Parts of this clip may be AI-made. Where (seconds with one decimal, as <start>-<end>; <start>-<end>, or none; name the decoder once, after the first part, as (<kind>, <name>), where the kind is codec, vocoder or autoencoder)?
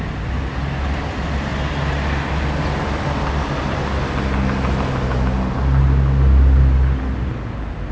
none